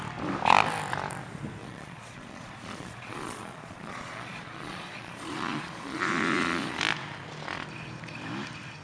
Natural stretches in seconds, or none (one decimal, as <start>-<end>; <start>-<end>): 0.0-1.6; 6.8-8.8